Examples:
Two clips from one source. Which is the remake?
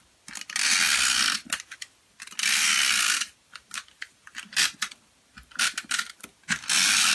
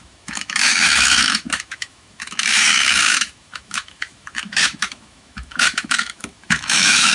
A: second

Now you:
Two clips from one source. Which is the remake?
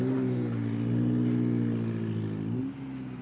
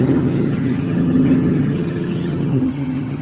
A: second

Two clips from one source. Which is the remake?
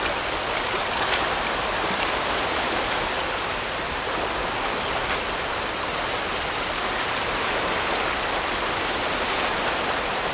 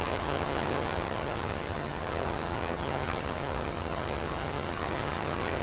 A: second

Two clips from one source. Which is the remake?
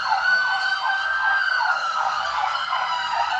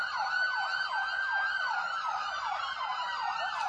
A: first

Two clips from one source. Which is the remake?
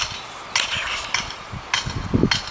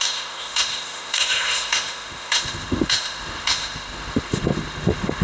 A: second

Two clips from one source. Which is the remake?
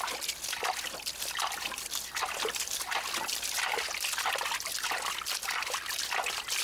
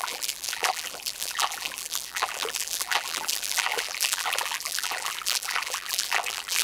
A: second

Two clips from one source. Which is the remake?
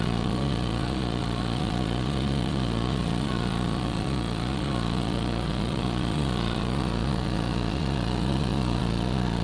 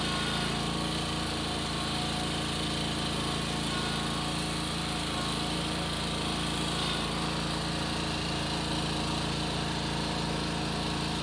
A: first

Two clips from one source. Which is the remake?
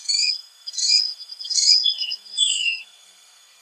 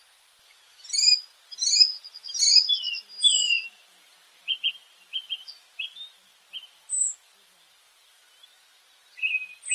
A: first